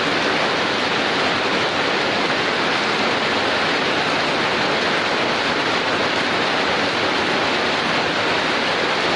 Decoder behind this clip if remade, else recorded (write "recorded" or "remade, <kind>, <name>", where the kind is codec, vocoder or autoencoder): recorded